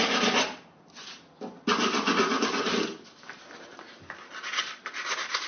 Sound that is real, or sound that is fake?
real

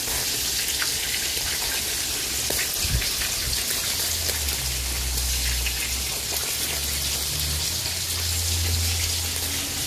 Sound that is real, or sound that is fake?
real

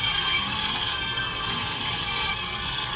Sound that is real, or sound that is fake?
fake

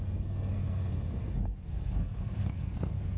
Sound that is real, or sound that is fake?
fake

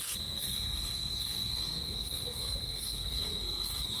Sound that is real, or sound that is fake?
fake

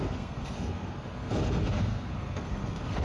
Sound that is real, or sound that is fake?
fake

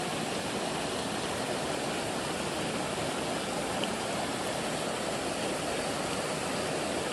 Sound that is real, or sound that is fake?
real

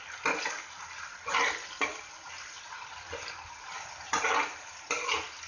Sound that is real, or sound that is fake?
real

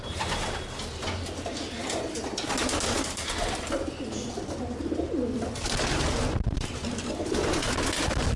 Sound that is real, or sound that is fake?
real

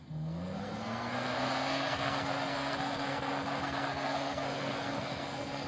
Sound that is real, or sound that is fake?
fake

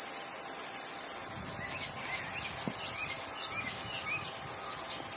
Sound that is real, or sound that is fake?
real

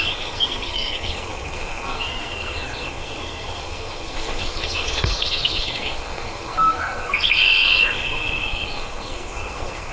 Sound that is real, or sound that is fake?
fake